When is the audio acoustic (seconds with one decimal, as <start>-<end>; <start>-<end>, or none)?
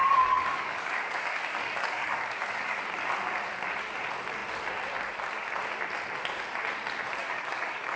2.8-7.2